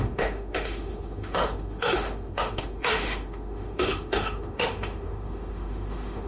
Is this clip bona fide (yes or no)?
no